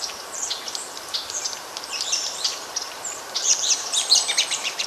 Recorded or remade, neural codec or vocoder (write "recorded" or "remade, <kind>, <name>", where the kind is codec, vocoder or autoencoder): remade, vocoder, BigVGAN v2